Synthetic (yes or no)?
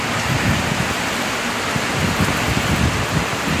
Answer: no